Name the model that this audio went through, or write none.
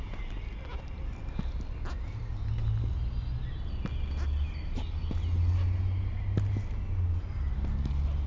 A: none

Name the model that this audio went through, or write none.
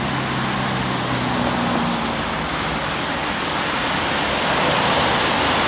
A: none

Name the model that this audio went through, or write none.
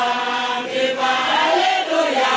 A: none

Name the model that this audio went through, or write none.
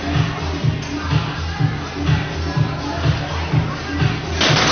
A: none